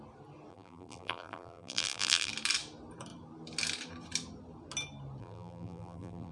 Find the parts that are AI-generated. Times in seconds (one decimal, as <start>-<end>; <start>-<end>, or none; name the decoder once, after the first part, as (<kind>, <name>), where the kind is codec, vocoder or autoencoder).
0.5-2.3 (vocoder, BigVGAN v2); 5.2-6.3

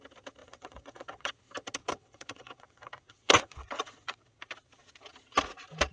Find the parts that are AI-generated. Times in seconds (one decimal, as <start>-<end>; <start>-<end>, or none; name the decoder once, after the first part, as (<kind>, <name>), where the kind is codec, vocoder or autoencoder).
0.4-1.3 (vocoder, WaveNeXt); 1.8-4.4

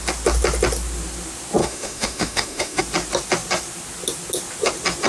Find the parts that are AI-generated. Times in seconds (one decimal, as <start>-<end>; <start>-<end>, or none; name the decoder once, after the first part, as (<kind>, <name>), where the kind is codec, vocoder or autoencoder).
1.6-2.8 (autoencoder, DAC-VAE)

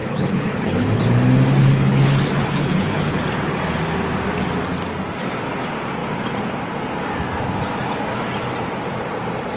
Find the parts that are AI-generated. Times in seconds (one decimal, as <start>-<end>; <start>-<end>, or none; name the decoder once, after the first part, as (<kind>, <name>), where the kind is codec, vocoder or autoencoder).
0.0-1.0 (codec, HILCodec); 1.6-3.2

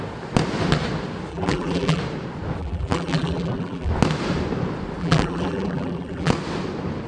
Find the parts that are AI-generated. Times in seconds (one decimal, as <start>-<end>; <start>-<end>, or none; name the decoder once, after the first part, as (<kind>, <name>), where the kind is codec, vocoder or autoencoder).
1.3-2.0 (vocoder, BigVGAN v2); 2.6-3.9; 5.0-6.3